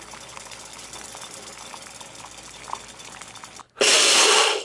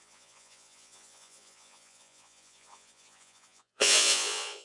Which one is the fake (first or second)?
second